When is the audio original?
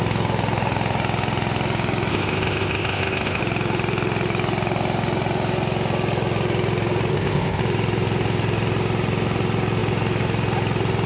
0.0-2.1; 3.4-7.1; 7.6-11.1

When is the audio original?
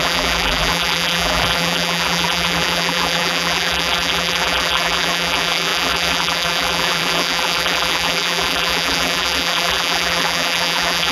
none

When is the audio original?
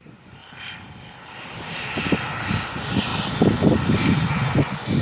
0.4-2.7; 3.1-4.3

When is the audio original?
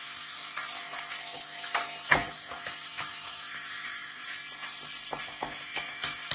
4.4-5.2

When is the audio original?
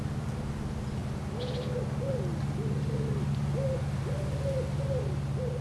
0.0-2.3; 3.3-5.6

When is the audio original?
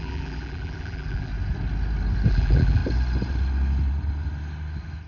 1.3-2.3; 2.8-5.1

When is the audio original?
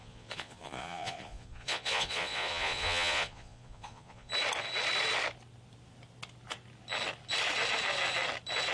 4.3-8.7